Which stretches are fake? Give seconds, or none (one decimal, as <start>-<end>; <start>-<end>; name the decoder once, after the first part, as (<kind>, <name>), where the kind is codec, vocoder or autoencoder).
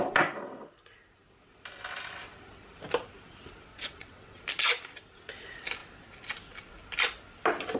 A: 3.7-4.4 (vocoder, WaveNeXt)